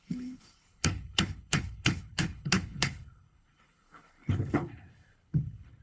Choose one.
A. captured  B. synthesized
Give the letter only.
B